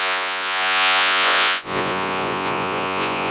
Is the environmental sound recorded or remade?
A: remade